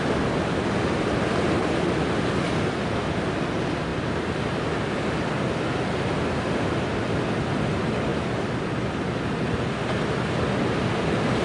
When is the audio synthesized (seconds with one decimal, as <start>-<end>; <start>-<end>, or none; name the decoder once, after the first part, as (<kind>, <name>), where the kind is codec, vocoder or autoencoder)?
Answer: none